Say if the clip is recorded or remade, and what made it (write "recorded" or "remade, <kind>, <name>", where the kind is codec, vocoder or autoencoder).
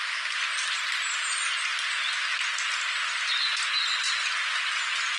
recorded